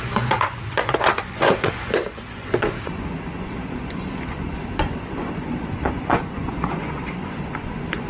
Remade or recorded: remade